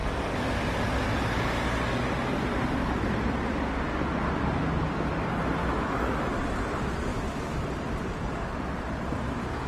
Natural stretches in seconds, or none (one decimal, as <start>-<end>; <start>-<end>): 0.0-5.6; 6.3-7.1; 7.6-9.7